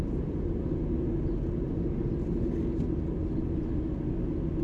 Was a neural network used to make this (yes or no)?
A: no